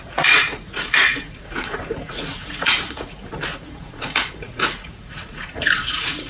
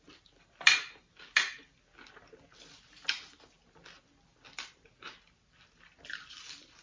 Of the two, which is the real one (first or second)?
second